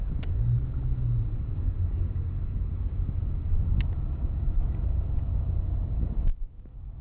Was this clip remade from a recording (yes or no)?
no